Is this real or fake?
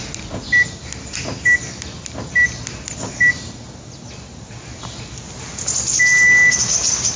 real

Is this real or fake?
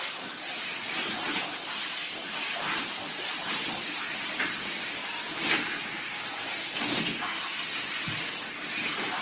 real